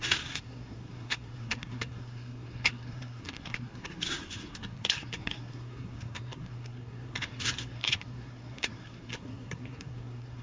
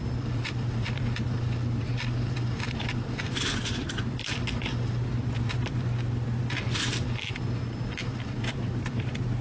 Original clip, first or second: second